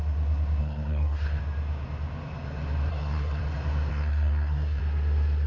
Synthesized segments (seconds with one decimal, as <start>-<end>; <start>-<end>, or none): 0.6-1.4; 2.9-3.4; 3.9-4.8